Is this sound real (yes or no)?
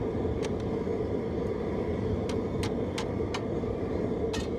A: yes